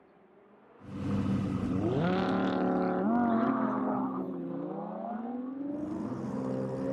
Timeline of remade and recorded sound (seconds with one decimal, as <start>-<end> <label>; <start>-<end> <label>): 0.0-3.8 recorded; 3.8-4.5 remade; 4.5-6.9 recorded